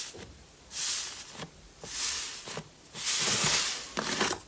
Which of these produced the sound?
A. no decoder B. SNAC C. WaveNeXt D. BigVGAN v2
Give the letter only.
A